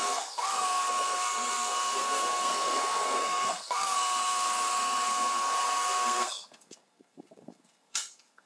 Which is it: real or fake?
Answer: fake